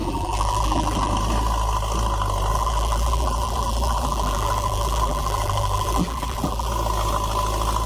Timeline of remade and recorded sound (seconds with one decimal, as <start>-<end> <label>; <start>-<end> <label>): 0.0-1.1 remade; 1.1-2.5 recorded; 2.5-6.7 remade; 6.7-7.9 recorded